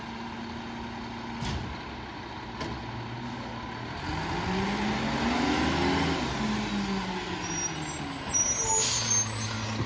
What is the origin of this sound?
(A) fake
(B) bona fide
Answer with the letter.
B